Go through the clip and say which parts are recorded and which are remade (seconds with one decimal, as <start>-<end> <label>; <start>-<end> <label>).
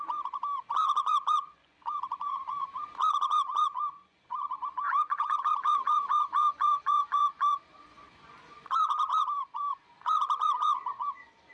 0.0-11.5 remade